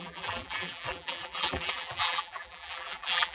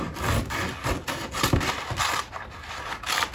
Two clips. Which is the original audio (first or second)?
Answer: second